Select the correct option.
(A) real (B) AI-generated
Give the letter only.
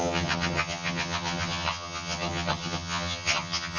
B